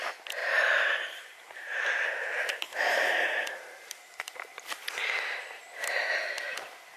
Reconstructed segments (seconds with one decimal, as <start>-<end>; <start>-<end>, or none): 0.4-4.6